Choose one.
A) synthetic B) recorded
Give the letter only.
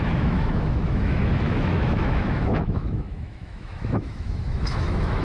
A